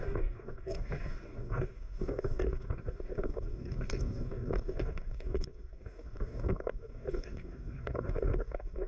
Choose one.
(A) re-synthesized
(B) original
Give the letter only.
A